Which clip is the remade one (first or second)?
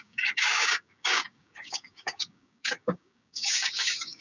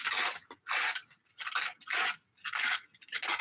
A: first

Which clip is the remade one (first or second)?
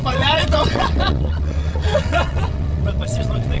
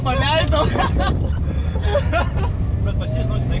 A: first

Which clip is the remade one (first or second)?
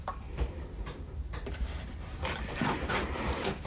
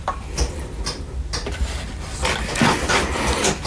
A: first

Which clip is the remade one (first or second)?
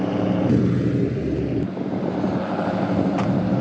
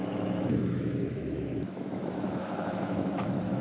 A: second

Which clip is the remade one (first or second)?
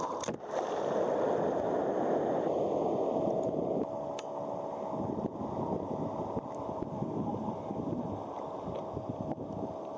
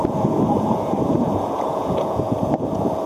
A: second